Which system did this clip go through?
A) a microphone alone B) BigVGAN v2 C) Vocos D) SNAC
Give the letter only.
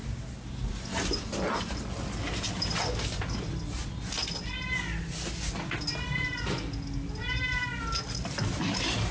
A